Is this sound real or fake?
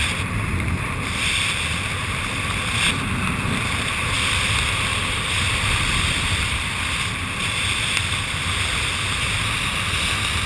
real